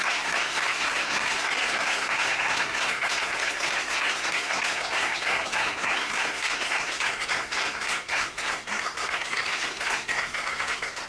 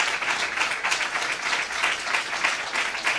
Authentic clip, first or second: second